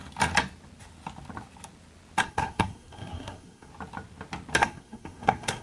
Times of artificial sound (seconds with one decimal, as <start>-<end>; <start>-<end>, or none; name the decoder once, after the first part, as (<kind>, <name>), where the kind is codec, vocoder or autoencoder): 2.2-3.7 (codec, SNAC); 4.6-5.6